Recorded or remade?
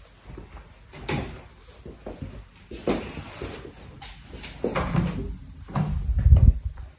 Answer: recorded